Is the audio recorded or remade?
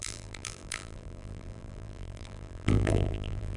remade